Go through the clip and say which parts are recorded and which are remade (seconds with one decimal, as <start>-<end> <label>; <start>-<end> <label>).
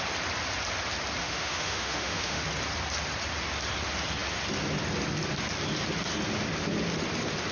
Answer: 0.0-1.2 recorded; 1.2-2.4 remade; 2.4-7.5 recorded